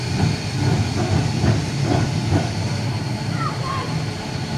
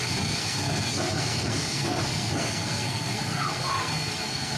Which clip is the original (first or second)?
first